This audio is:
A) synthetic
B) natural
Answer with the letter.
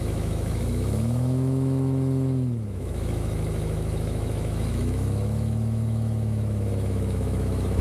A